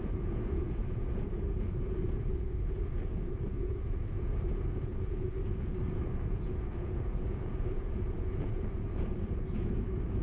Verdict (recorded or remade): remade